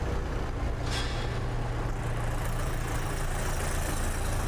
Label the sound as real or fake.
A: real